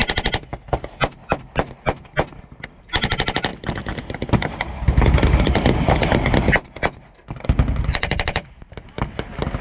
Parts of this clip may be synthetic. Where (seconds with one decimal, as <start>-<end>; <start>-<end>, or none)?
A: none